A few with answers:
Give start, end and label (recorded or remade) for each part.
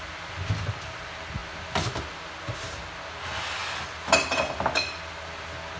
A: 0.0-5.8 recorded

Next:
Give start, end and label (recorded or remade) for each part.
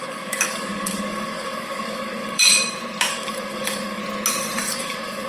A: 0.0-2.5 remade; 2.5-3.1 recorded; 3.1-4.0 remade; 4.0-4.6 recorded; 4.6-5.3 remade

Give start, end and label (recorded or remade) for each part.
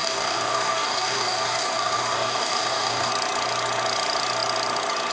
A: 0.0-3.1 remade; 3.1-5.1 recorded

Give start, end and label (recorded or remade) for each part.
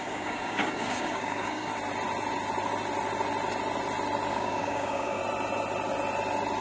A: 0.0-1.7 remade; 1.7-4.3 recorded; 4.3-5.2 remade; 5.2-6.6 recorded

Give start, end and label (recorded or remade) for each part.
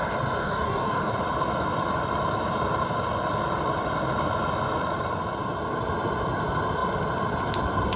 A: 0.0-0.4 recorded; 0.4-1.1 remade; 1.1-8.0 recorded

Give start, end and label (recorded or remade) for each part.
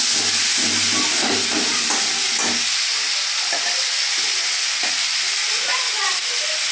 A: 0.0-6.7 recorded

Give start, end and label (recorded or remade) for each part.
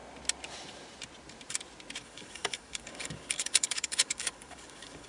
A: 0.0-2.0 recorded; 2.0-5.1 remade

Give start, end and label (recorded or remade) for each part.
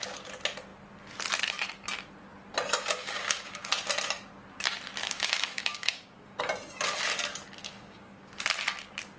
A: 0.0-3.0 recorded; 3.0-3.7 remade; 3.7-5.0 recorded; 5.0-6.4 remade; 6.4-7.6 recorded; 7.6-8.3 remade; 8.3-9.2 recorded